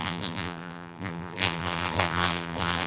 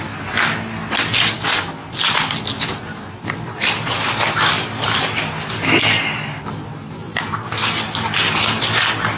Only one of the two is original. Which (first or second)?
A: second